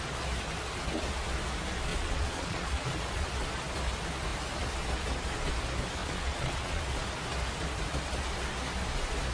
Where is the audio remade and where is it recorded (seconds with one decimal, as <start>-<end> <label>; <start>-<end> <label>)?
0.0-1.9 recorded; 1.9-3.3 remade; 3.3-6.0 recorded; 6.0-6.8 remade; 6.8-9.3 recorded